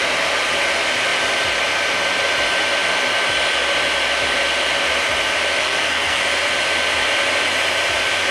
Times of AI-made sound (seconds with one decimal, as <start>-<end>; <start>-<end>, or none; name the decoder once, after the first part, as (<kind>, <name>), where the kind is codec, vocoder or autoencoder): 5.6-6.2 (codec, SNAC)